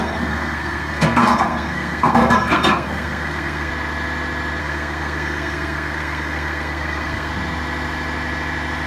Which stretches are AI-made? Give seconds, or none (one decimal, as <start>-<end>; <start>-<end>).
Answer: 0.0-3.7; 4.6-7.3